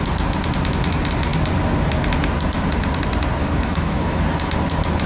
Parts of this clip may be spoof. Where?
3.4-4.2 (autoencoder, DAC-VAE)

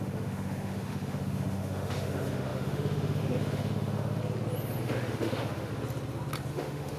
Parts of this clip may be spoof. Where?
0.0-4.2 (autoencoder, DAC-VAE); 4.8-5.7; 6.5-7.0

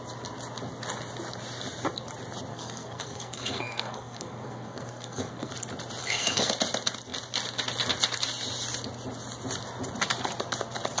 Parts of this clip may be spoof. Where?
2.5-5.5 (codec, SNAC); 6.0-6.5

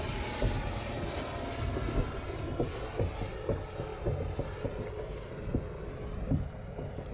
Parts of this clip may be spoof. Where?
none